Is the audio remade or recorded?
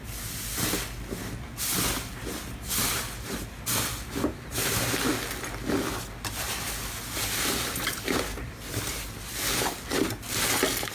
recorded